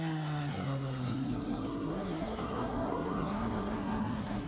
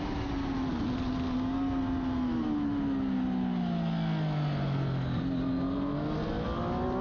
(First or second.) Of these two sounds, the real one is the second